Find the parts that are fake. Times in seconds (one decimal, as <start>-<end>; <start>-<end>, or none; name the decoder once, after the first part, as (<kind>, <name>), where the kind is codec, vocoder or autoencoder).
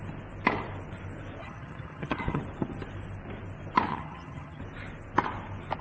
1.4-2.4 (vocoder, HiFi-GAN); 3.9-4.6